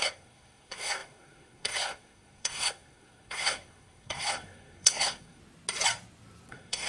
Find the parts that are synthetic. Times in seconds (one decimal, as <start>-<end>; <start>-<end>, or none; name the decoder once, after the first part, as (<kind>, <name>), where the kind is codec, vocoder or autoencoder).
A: 0.0-5.4 (codec, SNAC); 6.5-6.9